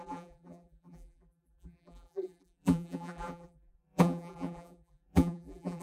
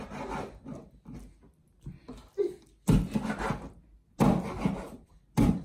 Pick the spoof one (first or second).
first